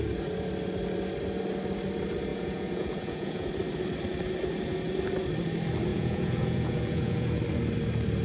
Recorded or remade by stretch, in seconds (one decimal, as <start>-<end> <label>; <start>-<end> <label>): 0.0-2.3 recorded; 2.3-3.5 remade; 3.5-5.9 recorded; 5.9-7.4 remade; 7.4-8.2 recorded